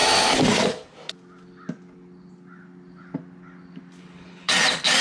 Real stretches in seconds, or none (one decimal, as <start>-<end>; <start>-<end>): 0.0-4.0; 4.5-5.0